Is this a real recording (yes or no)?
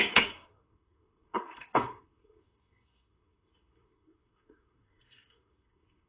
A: no